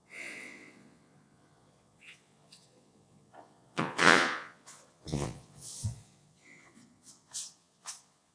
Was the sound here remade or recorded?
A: remade